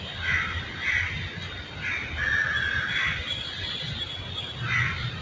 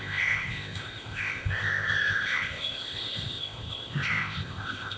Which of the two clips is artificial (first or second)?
second